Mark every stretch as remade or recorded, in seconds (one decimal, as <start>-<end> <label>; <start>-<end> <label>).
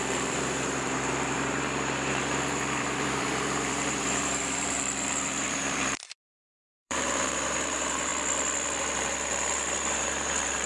0.0-8.1 remade; 8.1-8.8 recorded; 8.8-10.7 remade